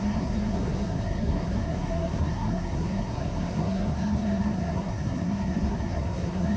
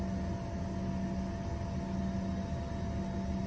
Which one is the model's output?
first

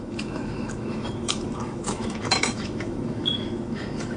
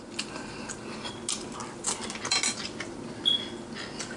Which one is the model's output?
first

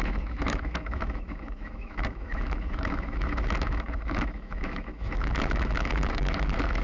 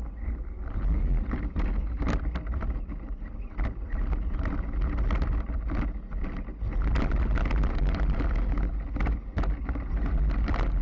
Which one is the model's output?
first